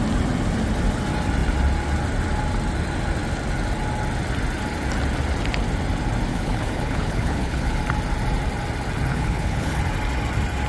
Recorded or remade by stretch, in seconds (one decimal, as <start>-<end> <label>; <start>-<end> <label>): 0.0-6.3 recorded; 6.3-7.8 remade; 7.8-9.1 recorded; 9.1-9.8 remade; 9.8-10.7 recorded